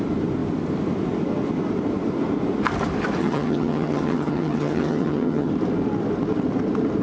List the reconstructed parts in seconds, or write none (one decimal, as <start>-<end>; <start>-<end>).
3.2-5.5